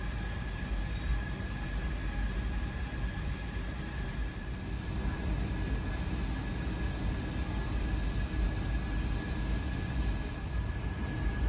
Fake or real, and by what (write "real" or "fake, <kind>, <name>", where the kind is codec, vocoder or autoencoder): real